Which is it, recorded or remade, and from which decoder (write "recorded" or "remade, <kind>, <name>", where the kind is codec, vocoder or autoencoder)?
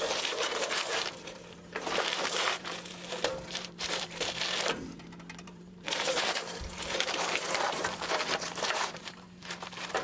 remade, vocoder, BigVGAN v2